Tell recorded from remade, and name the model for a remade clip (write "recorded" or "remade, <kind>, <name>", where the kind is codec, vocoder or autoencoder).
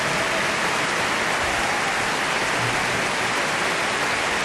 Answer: recorded